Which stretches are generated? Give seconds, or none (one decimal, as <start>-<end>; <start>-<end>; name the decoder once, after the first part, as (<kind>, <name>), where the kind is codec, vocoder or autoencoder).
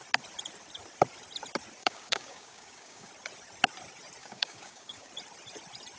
1.8-3.1 (codec, DAC); 4.2-5.1